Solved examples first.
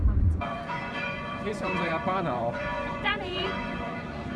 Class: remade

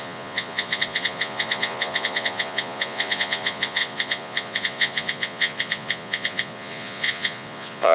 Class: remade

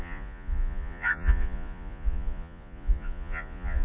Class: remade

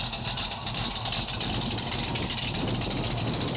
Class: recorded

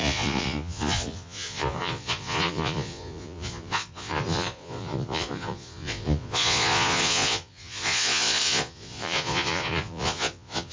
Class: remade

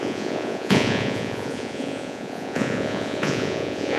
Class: remade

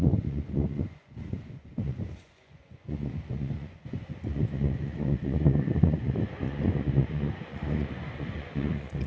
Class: remade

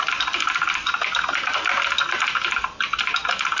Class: recorded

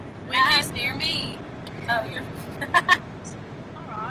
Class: recorded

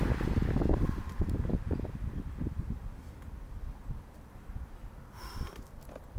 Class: recorded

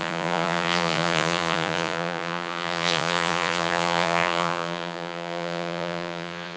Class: remade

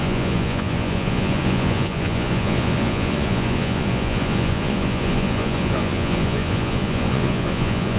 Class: remade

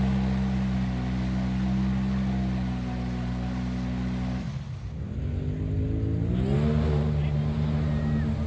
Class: recorded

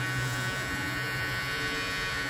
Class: remade